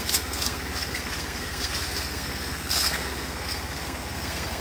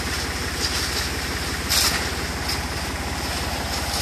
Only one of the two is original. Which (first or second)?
second